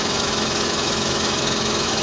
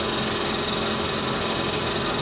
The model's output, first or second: first